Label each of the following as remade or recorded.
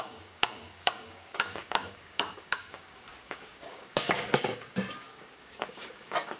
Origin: remade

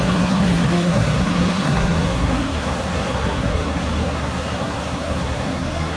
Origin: remade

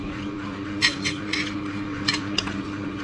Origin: remade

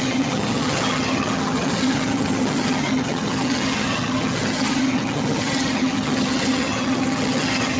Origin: remade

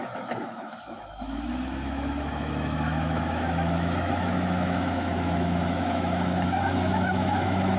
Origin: remade